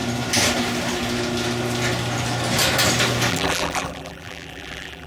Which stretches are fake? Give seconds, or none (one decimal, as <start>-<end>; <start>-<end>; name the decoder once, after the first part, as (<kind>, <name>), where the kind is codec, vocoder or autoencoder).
3.3-5.1 (vocoder, BigVGAN v2)